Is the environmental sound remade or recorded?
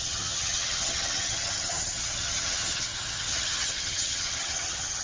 remade